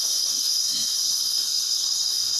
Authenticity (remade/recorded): remade